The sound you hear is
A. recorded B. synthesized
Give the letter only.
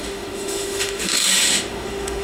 B